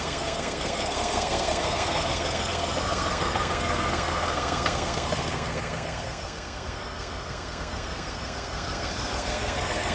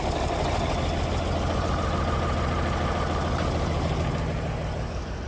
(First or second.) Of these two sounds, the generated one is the first